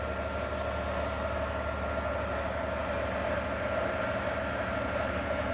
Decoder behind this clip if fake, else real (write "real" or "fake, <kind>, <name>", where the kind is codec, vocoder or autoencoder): real